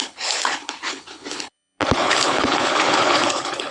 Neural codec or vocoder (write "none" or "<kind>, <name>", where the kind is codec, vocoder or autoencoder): codec, HILCodec